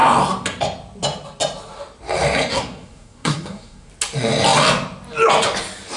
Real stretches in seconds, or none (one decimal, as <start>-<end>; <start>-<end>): 0.0-2.5; 3.9-6.0

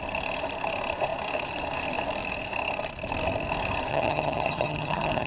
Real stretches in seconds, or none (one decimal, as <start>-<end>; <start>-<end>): 0.0-3.9

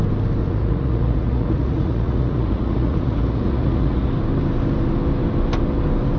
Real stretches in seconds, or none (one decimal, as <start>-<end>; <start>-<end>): 0.0-0.4; 4.1-6.2

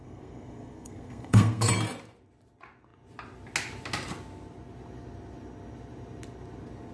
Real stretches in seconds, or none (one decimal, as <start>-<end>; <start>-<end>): 1.7-6.9

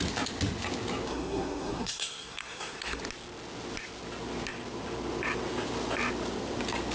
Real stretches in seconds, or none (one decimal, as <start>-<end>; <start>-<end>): 0.0-1.1; 3.0-6.9

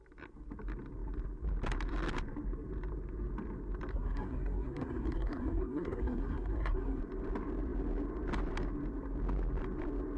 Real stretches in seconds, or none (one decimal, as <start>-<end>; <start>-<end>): 0.0-3.9; 7.0-10.2

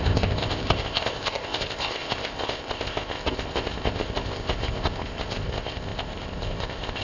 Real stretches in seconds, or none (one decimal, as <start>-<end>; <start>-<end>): none

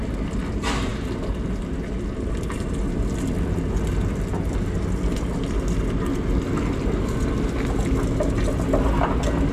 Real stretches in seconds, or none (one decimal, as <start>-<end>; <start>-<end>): 0.0-9.5